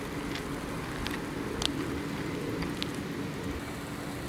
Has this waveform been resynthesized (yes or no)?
no